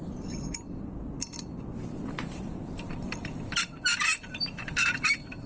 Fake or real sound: fake